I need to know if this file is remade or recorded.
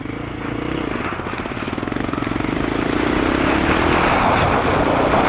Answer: recorded